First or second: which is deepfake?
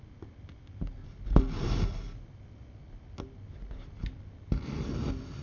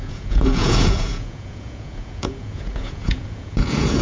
second